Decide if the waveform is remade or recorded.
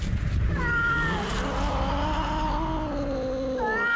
recorded